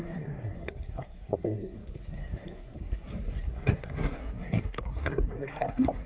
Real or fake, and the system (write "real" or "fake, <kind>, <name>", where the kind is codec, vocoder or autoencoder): fake, codec, SNAC